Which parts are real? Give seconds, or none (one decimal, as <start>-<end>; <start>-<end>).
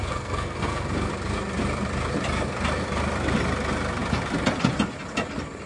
1.1-5.7